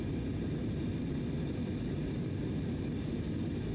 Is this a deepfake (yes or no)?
no